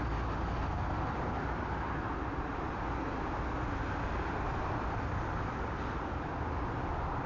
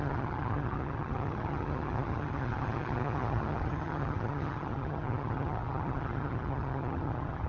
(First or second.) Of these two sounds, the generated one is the second